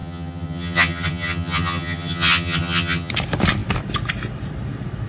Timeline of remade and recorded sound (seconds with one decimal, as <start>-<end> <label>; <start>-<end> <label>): 0.0-3.1 remade; 3.1-5.1 recorded